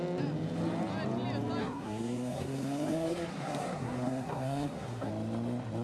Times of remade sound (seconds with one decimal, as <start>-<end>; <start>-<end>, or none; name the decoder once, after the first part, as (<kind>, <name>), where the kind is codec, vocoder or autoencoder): 1.6-5.1 (codec, SNAC)